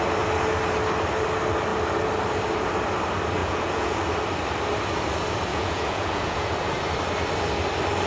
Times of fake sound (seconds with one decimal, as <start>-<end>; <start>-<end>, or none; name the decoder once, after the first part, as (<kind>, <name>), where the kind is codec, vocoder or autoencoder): 3.4-4.0 (vocoder, Vocos); 5.5-6.5